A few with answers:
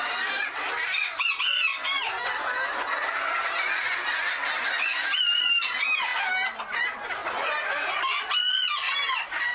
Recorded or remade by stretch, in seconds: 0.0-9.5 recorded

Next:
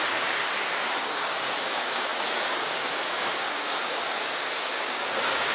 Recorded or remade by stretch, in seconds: 0.0-0.4 remade; 0.4-1.0 recorded; 1.0-5.5 remade

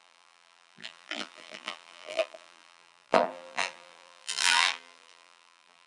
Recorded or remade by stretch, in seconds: 0.0-5.9 remade